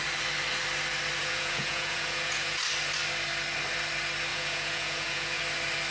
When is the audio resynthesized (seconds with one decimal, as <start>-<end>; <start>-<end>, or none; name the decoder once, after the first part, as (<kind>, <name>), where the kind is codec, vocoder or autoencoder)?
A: 1.2-2.6 (vocoder, Vocos); 4.3-5.4